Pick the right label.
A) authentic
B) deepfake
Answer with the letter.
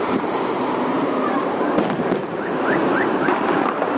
B